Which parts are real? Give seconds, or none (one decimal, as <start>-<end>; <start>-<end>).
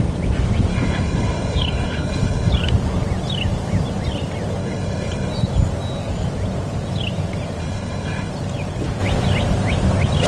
0.0-0.7; 2.5-4.6; 5.3-7.6; 8.3-10.3